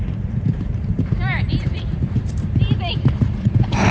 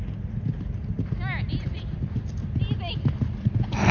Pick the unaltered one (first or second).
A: second